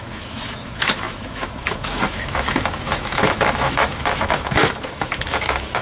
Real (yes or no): no